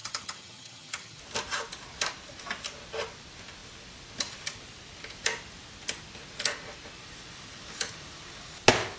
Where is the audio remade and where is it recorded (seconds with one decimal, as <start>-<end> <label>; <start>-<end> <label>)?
0.0-1.2 remade; 1.2-9.0 recorded